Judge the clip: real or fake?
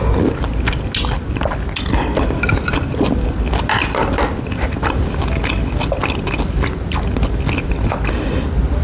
real